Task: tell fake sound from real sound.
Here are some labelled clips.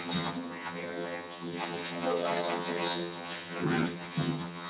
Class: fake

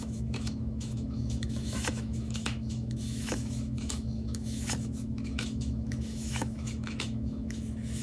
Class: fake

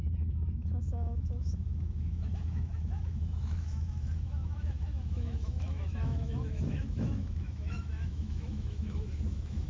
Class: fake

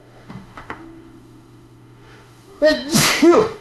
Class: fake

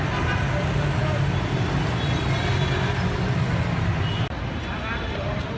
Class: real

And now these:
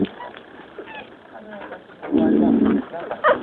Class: real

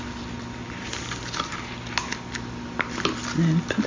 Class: real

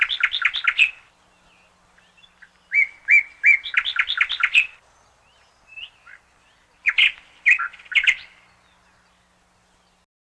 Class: real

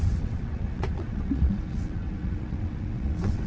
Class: fake